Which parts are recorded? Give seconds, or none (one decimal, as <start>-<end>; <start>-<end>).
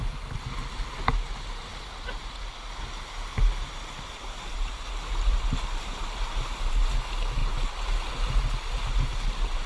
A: 0.0-9.7